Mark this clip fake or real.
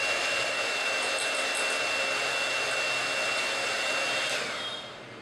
real